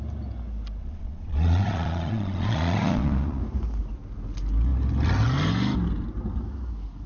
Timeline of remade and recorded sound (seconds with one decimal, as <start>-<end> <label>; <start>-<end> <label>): 0.0-0.8 recorded; 0.8-3.4 remade; 3.4-7.1 recorded